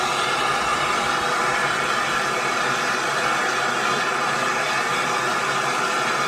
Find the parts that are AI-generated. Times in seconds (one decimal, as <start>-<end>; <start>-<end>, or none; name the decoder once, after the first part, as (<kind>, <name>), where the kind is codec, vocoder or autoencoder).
none

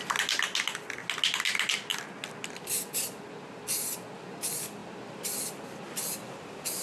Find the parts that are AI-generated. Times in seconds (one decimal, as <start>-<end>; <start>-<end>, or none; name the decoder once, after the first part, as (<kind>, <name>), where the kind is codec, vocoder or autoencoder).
none

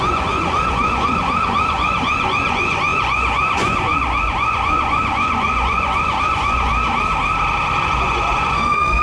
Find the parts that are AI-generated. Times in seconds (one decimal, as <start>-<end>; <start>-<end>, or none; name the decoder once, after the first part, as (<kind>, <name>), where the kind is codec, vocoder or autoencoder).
0.0-6.7 (vocoder, Vocos); 7.8-9.0

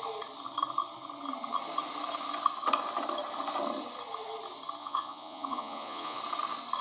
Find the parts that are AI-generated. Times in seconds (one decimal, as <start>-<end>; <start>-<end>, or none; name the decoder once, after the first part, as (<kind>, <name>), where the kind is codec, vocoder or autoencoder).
4.8-6.2 (vocoder, Vocos)

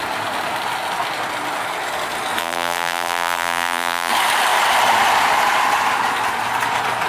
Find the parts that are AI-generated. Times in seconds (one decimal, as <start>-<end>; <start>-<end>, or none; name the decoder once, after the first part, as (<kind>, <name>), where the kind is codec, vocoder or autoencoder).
2.4-4.1 (vocoder, BigVGAN v2)

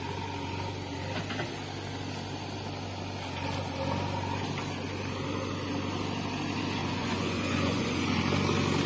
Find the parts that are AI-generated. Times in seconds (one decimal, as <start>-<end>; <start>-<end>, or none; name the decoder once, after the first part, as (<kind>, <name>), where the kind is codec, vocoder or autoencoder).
6.8-8.2 (vocoder, Vocos)